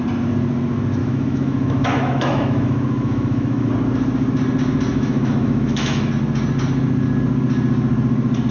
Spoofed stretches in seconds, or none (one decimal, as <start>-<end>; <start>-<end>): 1.0-3.7; 4.9-6.1